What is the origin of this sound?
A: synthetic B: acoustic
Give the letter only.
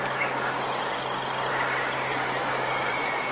B